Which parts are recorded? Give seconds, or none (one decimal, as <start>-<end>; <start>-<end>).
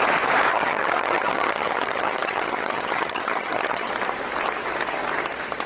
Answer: 0.0-0.5; 3.9-5.7